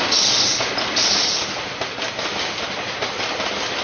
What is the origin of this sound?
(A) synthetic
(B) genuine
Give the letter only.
B